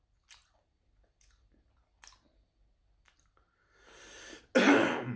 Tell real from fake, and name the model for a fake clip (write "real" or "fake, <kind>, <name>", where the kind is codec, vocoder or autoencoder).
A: real